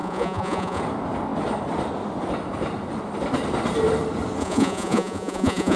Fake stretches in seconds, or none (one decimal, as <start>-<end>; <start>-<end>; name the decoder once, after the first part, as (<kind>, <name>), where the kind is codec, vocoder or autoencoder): 0.0-0.8 (vocoder, Vocos); 4.4-5.8